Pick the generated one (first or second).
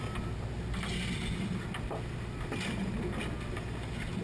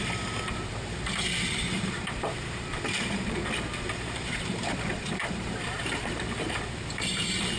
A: second